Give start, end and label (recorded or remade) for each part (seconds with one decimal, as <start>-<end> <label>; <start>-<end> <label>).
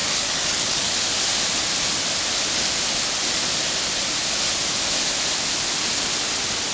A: 0.0-0.9 remade; 0.9-6.7 recorded